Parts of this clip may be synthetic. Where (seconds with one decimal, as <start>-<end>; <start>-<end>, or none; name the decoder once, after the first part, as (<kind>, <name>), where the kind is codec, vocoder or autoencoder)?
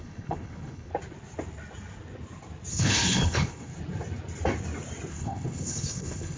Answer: 0.0-0.9 (codec, HILCodec); 2.7-3.7; 5.1-6.4